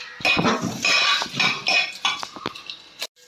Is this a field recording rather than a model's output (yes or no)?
yes